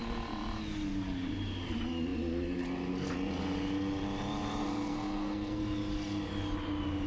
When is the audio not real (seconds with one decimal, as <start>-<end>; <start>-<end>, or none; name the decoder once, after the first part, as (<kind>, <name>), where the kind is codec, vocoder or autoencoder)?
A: 4.6-5.6 (codec, SNAC)